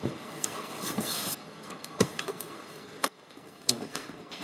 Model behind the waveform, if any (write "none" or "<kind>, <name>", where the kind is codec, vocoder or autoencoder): codec, SNAC